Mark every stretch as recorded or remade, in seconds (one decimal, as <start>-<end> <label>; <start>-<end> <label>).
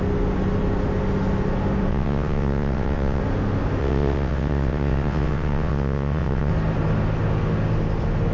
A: 0.0-1.9 recorded; 1.9-3.2 remade; 3.2-3.8 recorded; 3.8-6.5 remade; 6.5-8.3 recorded